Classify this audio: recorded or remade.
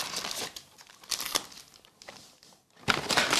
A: recorded